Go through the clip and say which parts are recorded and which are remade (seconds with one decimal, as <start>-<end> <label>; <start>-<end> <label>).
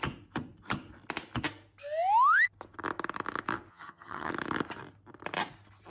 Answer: 0.0-3.7 recorded; 3.7-4.3 remade; 4.3-5.9 recorded